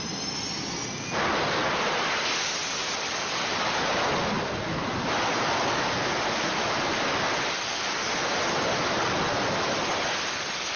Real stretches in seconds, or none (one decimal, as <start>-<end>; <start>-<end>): 0.0-10.8